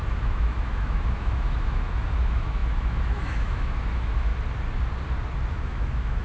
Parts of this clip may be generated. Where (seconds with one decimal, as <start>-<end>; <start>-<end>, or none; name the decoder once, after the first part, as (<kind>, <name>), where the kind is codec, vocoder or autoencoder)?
0.0-4.3 (autoencoder, DAC-VAE); 5.5-6.2